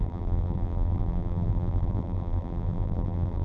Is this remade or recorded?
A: remade